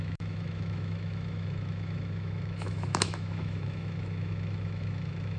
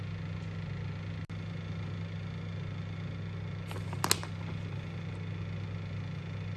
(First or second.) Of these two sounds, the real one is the second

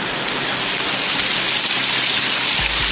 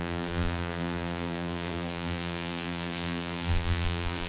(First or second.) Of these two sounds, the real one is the first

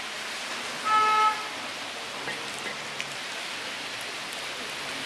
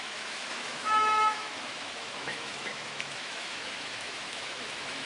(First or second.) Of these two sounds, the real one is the first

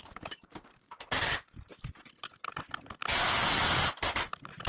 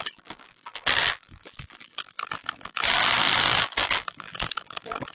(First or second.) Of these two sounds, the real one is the first